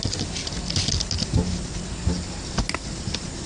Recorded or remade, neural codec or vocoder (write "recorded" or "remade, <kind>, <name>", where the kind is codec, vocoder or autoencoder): recorded